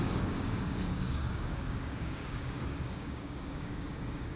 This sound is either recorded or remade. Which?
remade